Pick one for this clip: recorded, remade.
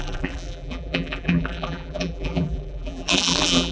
remade